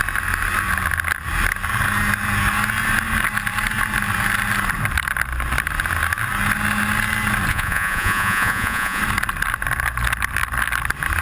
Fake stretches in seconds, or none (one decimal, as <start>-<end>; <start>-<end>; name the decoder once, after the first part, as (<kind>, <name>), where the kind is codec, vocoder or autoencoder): 7.5-9.0 (vocoder, Vocos)